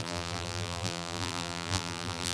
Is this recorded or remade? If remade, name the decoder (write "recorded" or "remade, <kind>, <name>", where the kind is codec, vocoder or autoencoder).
remade, vocoder, BigVGAN v2